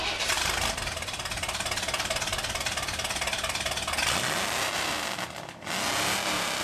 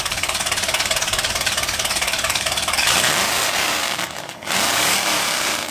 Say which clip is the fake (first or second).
second